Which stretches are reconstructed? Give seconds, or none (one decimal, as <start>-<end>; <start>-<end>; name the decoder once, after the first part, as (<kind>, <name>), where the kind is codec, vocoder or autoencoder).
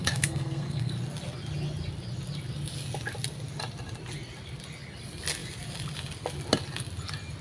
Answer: 0.0-0.9 (codec, SNAC)